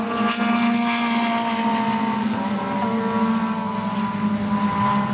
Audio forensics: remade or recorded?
recorded